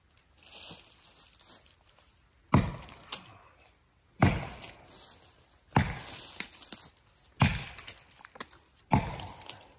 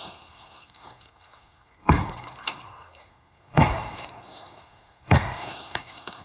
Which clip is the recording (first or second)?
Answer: first